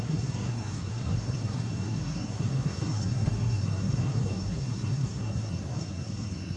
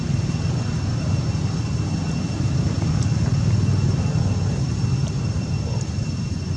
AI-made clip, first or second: first